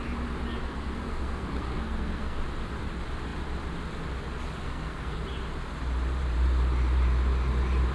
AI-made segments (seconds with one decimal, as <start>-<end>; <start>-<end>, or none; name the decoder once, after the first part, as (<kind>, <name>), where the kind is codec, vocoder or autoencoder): 0.6-2.4 (codec, SNAC); 4.6-5.2